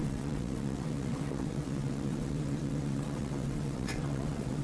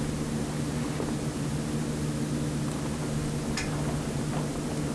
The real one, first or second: second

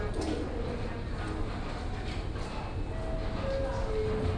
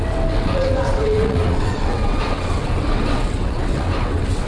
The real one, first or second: first